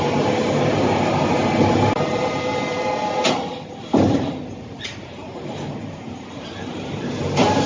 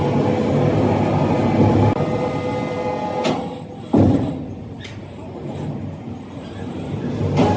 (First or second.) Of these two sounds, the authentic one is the second